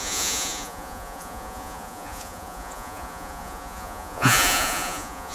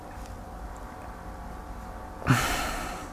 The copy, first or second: first